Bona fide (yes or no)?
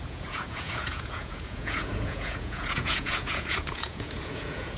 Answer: no